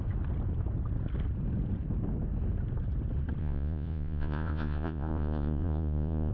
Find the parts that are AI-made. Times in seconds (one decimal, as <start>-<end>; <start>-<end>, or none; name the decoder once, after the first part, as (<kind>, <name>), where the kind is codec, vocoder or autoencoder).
3.4-6.3 (vocoder, Vocos)